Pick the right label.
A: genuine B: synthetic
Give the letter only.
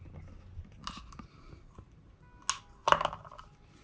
A